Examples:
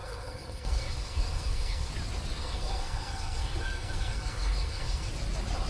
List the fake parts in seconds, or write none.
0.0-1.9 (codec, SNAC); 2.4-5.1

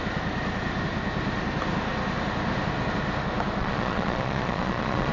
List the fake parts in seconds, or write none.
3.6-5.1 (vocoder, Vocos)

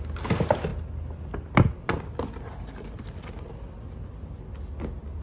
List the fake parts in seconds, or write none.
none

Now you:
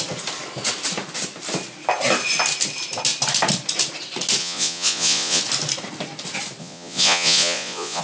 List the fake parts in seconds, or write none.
4.4-5.4 (vocoder, Vocos); 6.6-8.0